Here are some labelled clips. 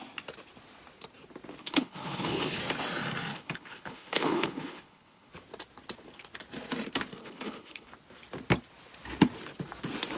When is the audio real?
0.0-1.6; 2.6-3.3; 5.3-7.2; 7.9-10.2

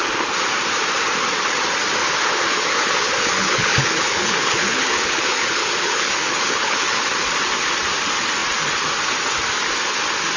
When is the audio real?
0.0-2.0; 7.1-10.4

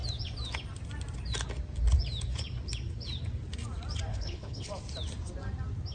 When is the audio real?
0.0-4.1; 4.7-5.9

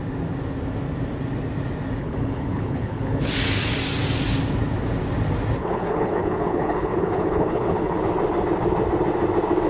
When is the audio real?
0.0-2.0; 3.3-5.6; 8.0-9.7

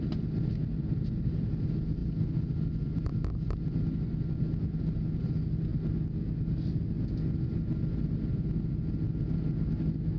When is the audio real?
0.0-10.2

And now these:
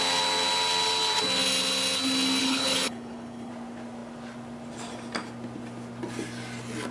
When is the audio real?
0.0-2.4; 3.5-6.9